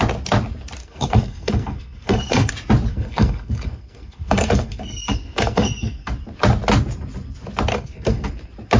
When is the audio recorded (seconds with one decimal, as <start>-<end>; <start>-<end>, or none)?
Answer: 0.0-0.8; 2.5-2.9; 6.1-7.7; 8.3-8.8